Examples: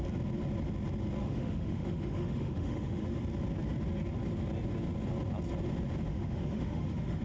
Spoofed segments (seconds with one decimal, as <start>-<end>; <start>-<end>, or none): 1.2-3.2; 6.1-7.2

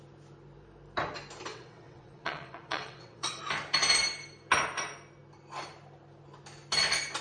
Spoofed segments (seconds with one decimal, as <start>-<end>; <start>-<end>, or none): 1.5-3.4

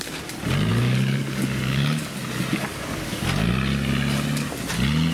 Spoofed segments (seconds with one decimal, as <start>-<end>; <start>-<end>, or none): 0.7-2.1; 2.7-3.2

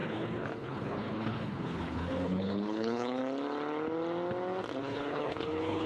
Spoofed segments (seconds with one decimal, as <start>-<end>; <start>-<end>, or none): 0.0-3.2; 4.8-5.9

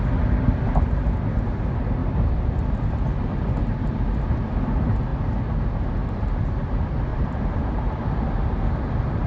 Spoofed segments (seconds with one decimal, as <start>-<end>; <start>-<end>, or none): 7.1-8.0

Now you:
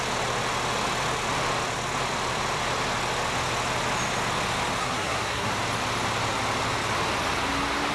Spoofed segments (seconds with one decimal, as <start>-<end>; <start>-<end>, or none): 4.8-5.5